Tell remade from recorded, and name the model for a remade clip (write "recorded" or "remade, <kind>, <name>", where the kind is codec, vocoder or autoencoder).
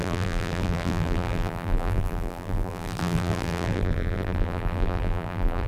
remade, vocoder, BigVGAN v2